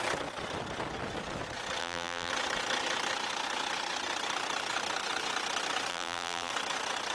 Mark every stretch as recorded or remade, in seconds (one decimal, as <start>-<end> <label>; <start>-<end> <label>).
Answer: 0.0-1.8 recorded; 1.8-2.3 remade; 2.3-5.9 recorded; 5.9-6.5 remade; 6.5-7.1 recorded